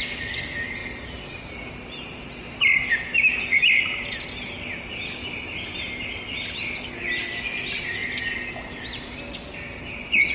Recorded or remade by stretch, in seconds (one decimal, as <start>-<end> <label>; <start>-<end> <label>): 0.0-10.3 recorded